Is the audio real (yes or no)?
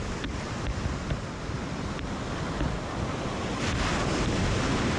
yes